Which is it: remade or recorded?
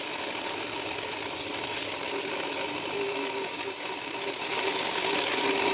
recorded